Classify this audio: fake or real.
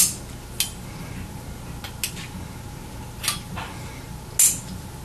real